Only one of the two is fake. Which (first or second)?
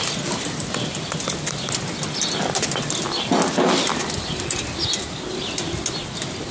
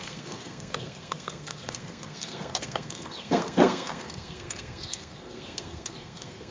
second